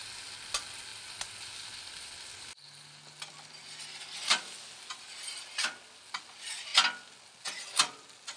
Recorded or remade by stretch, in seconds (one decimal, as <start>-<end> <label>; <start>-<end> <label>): 0.0-8.4 recorded

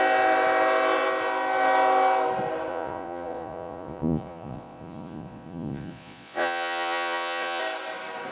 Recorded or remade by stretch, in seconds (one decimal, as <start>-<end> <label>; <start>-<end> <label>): 0.0-2.7 recorded; 2.7-7.6 remade; 7.6-8.3 recorded